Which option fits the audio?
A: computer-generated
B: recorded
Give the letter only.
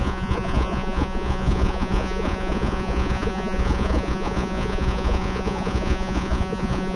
A